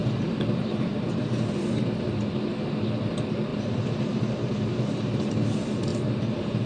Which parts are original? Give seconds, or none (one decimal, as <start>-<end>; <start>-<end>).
2.3-3.5; 5.3-5.9

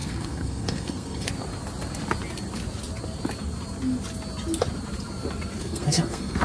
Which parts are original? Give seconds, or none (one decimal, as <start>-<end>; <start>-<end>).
1.3-5.6

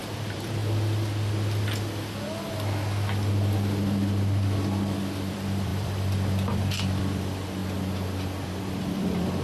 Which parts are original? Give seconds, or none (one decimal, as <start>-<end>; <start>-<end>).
0.6-5.3; 7.6-8.4

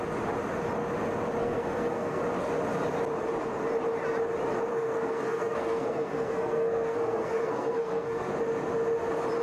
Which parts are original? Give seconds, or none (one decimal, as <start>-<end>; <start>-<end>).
0.0-1.4; 2.2-4.7; 8.3-9.4

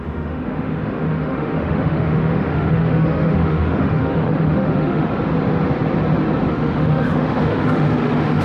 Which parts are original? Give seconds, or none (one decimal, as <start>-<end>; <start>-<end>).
5.1-6.5

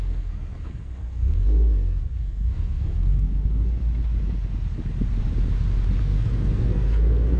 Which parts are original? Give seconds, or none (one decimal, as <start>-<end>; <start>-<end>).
3.8-6.0

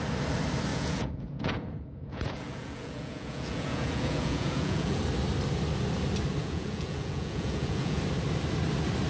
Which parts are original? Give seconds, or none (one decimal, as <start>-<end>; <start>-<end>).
0.0-0.7; 5.0-6.4; 8.0-9.1

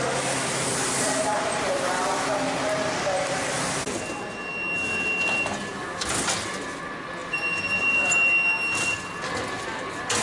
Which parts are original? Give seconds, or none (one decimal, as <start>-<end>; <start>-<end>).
0.0-0.7; 2.9-10.2